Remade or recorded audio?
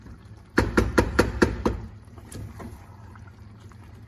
remade